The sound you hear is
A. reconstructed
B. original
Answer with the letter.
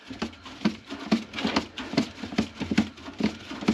B